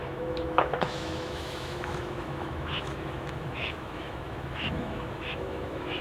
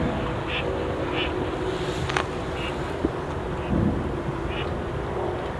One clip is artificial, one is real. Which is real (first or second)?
second